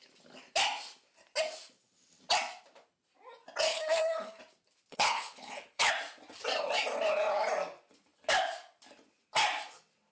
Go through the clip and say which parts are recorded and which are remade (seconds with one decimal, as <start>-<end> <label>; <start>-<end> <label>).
0.0-3.7 recorded; 3.7-4.4 remade; 4.4-4.9 recorded; 4.9-5.9 remade; 5.9-10.1 recorded